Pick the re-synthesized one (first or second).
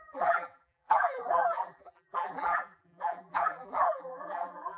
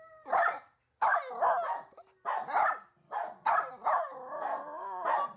first